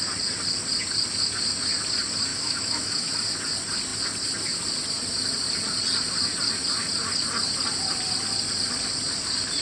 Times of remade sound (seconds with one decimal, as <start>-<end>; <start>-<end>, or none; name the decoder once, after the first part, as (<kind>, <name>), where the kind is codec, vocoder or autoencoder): 2.3-3.1 (autoencoder, DAC-VAE)